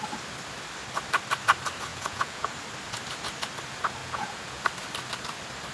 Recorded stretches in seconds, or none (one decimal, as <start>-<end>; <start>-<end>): 0.0-1.9; 2.5-4.0; 4.6-5.7